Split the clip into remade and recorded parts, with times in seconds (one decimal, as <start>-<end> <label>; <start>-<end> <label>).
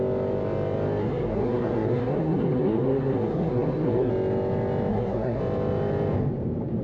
0.0-1.0 recorded; 1.0-4.1 remade; 4.1-4.9 recorded; 4.9-5.4 remade; 5.4-6.8 recorded